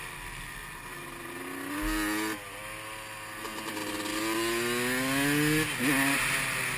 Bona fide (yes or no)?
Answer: yes